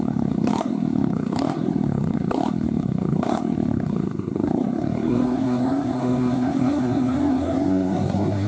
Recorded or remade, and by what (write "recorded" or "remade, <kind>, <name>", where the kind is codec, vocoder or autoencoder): remade, codec, SNAC